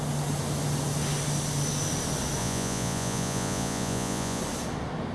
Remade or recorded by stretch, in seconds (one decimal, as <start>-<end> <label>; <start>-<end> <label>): 0.0-2.4 recorded; 2.4-4.4 remade; 4.4-5.1 recorded